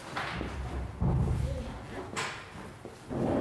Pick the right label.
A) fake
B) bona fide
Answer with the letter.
B